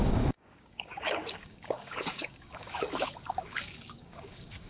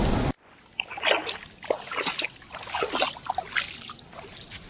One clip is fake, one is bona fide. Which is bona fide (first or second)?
second